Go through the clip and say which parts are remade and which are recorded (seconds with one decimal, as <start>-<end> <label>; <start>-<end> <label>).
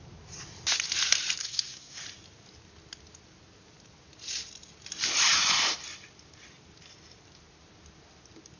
0.0-1.4 recorded; 1.4-2.0 remade; 2.0-8.6 recorded